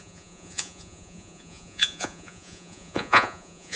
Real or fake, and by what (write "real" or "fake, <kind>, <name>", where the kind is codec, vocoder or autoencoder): fake, vocoder, Vocos